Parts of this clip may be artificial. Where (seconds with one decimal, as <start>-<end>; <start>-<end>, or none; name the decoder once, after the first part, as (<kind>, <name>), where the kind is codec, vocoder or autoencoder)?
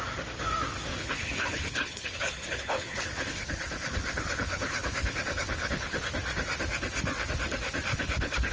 0.9-6.0 (codec, HILCodec); 7.9-8.5